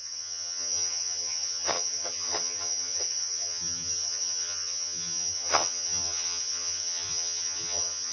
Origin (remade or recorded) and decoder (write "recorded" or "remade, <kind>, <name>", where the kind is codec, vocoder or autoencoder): remade, vocoder, HiFi-GAN